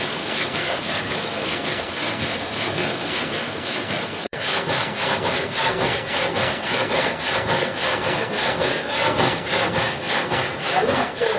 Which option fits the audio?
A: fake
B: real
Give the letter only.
A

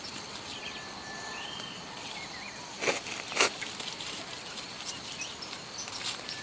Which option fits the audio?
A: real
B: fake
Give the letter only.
A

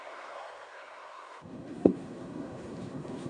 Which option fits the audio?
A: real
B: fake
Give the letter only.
B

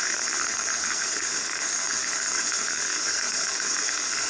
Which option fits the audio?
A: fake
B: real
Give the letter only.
A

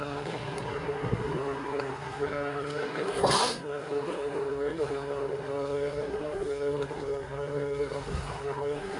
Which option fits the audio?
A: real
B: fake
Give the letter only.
B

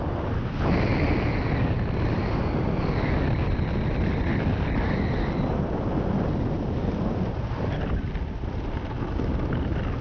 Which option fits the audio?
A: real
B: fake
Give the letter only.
A